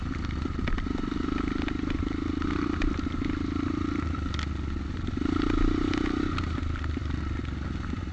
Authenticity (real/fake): real